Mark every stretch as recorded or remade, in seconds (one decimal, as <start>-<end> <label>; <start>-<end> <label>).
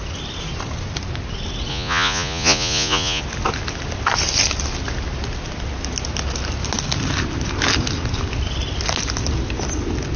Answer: 0.0-1.7 recorded; 1.7-3.2 remade; 3.2-10.2 recorded